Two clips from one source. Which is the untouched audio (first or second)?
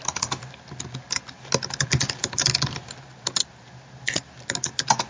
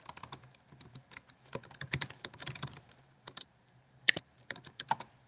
first